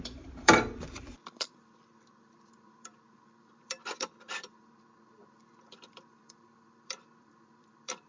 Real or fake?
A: fake